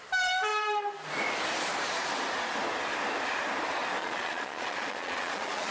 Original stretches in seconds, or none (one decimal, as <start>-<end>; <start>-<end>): 0.0-4.0

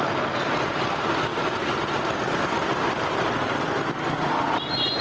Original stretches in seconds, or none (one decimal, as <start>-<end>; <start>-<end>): 0.0-1.3; 4.3-5.0

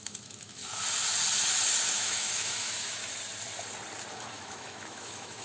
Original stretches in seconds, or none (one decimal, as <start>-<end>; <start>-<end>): 0.6-1.8; 3.0-4.1

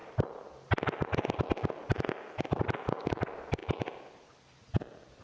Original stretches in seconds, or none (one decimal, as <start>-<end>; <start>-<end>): 0.0-5.2

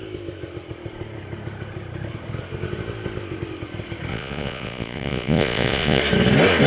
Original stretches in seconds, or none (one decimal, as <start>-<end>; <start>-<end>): 0.0-4.1; 6.0-6.7

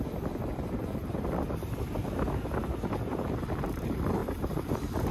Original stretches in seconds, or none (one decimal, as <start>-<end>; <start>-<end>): 0.0-5.1

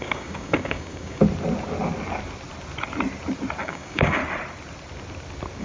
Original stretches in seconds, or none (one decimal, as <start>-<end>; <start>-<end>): 1.2-3.6; 4.2-5.6